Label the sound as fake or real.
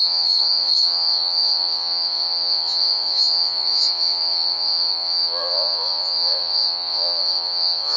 fake